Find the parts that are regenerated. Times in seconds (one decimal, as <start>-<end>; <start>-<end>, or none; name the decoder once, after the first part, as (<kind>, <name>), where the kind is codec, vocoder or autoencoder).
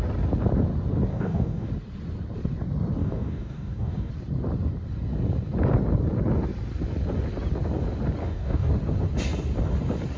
1.1-1.7 (codec, DAC); 3.0-4.1; 8.2-8.7